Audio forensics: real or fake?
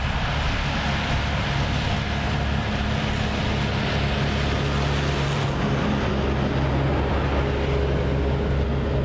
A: real